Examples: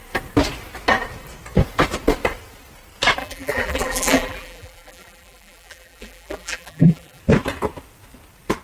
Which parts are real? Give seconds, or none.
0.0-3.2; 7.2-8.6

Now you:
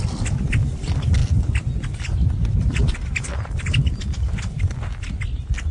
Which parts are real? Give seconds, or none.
0.0-5.7

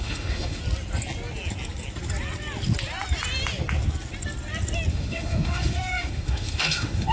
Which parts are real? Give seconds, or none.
0.6-4.9

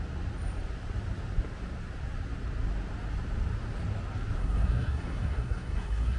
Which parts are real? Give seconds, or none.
0.0-4.4

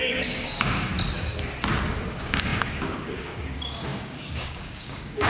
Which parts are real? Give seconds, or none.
0.9-1.9